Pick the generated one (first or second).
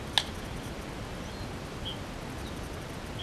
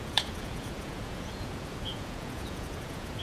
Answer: second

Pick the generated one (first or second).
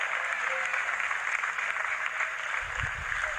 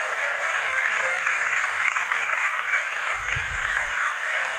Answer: second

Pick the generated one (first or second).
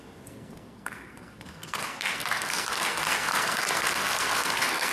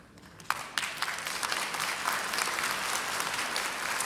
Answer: first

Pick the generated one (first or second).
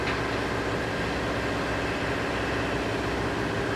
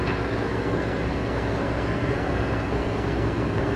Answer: second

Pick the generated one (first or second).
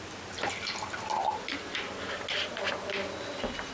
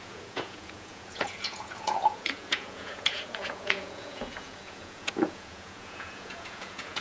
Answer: second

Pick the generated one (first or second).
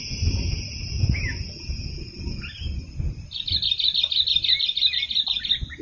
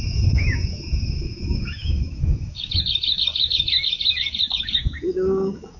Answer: second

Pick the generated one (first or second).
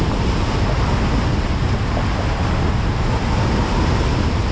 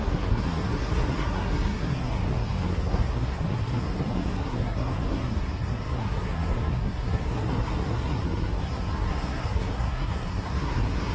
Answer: second